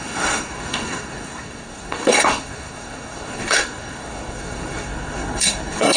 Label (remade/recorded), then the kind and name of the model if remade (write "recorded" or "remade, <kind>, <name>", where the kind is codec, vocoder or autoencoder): remade, codec, SNAC